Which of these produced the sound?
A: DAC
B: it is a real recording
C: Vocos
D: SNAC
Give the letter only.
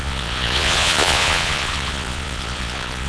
C